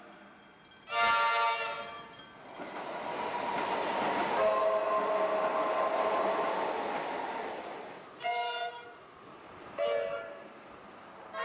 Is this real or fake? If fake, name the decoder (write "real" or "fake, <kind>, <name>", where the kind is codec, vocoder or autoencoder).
real